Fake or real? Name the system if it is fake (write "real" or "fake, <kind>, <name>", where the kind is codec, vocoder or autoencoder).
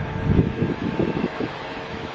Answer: fake, autoencoder, DAC-VAE